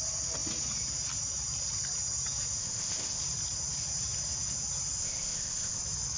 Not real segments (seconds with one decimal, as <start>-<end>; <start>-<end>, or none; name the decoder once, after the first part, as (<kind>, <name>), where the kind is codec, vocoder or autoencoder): 2.6-3.2 (codec, ZipCodec); 5.0-5.8